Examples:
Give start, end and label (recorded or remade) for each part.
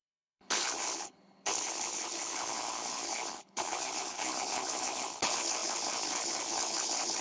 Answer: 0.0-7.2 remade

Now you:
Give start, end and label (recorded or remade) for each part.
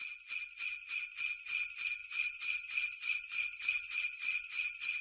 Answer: 0.0-2.0 recorded; 2.0-5.0 remade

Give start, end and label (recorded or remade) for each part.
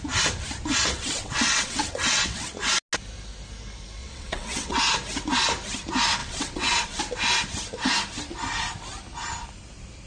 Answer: 0.0-0.7 recorded; 0.7-2.5 remade; 2.5-4.0 recorded; 4.0-4.8 remade; 4.8-6.2 recorded; 6.2-7.0 remade; 7.0-10.1 recorded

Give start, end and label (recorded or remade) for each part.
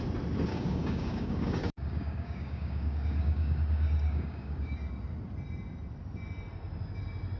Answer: 0.0-0.5 recorded; 0.5-4.9 remade; 4.9-7.4 recorded